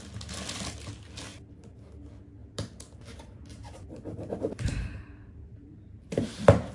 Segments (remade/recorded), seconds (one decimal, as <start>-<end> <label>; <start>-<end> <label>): 0.0-1.3 recorded; 1.3-1.8 remade; 1.8-2.4 recorded; 2.4-6.7 remade